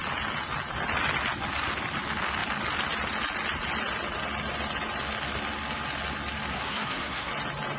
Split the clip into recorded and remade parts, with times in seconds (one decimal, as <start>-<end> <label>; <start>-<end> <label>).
0.0-6.5 recorded; 6.5-7.3 remade; 7.3-7.8 recorded